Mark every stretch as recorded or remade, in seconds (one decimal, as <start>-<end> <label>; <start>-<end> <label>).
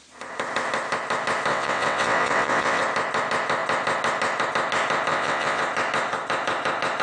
0.0-1.5 recorded; 1.5-2.8 remade; 2.8-5.1 recorded; 5.1-5.6 remade; 5.6-7.0 recorded